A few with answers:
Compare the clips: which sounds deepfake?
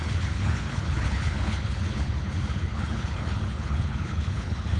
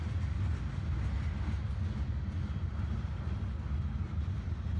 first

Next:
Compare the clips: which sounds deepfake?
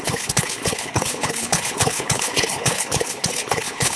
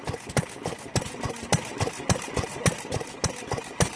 first